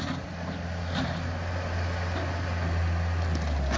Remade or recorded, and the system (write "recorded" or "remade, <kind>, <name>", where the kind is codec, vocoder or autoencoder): recorded